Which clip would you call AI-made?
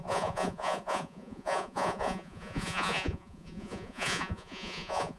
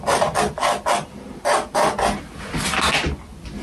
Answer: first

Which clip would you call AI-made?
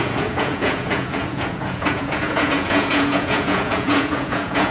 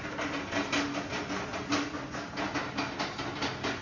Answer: first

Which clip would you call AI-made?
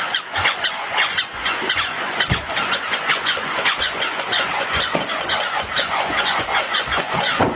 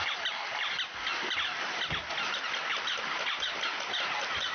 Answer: first